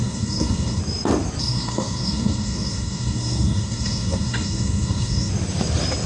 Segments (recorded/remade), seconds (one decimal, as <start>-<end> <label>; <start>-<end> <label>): 0.0-0.8 remade; 0.8-1.4 recorded; 1.4-5.3 remade; 5.3-6.1 recorded